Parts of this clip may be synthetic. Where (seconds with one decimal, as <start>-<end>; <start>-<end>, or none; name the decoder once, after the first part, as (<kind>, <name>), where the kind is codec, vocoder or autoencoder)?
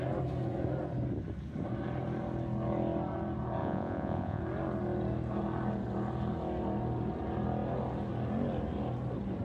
3.6-4.4 (vocoder, Vocos)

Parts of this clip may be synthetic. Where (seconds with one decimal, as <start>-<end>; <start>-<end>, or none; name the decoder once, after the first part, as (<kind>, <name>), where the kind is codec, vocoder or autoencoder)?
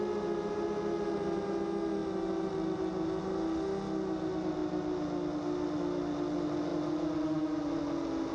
none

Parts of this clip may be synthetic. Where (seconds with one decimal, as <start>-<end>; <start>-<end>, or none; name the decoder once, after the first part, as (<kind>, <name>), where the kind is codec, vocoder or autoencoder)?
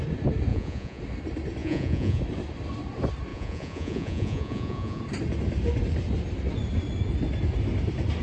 0.5-1.0 (vocoder, Vocos); 1.6-2.2; 3.3-5.0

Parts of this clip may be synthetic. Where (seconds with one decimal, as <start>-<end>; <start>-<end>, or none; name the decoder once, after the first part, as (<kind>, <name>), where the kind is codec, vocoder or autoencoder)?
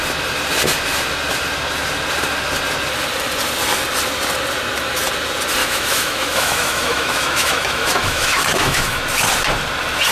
5.6-9.0 (autoencoder, DAC-VAE)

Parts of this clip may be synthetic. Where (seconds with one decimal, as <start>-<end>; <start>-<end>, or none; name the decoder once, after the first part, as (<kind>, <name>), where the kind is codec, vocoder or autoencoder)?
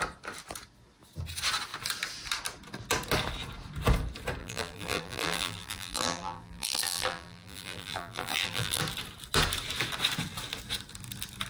4.4-8.8 (vocoder, BigVGAN v2)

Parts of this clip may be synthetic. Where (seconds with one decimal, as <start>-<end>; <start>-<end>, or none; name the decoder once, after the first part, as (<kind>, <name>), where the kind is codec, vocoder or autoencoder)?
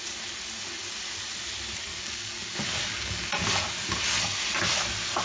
1.9-3.3 (codec, DAC)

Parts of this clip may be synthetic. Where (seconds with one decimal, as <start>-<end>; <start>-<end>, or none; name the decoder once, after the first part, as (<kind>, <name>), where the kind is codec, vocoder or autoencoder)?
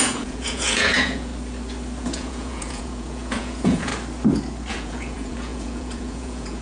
0.0-1.3 (vocoder, Vocos); 2.0-3.9; 4.7-6.6